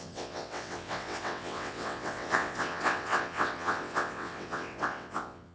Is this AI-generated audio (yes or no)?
yes